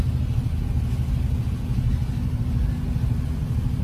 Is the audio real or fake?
real